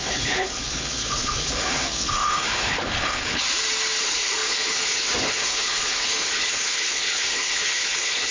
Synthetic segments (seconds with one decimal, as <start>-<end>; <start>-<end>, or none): 0.0-3.4; 4.0-8.3